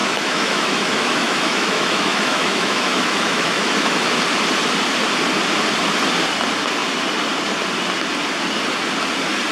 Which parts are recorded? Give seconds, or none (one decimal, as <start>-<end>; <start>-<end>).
4.2-9.5